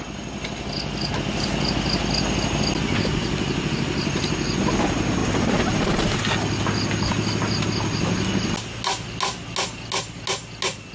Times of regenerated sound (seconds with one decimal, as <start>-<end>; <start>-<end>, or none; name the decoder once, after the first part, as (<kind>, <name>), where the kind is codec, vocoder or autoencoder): 5.2-6.2 (vocoder, BigVGAN v2)